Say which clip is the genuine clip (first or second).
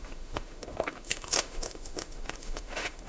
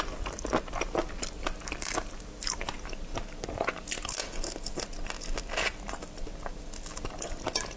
second